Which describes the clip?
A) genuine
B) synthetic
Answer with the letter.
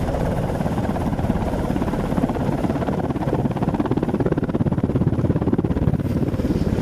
B